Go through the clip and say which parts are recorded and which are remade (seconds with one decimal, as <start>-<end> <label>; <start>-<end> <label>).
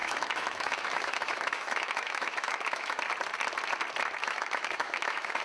0.0-3.0 remade; 3.0-4.2 recorded; 4.2-5.4 remade